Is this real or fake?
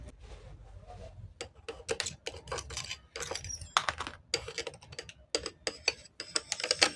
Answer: real